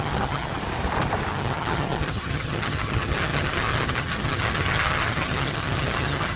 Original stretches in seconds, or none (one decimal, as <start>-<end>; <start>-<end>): 0.5-1.3